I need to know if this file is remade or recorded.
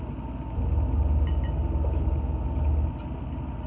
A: recorded